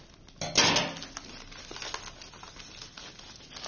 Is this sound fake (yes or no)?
no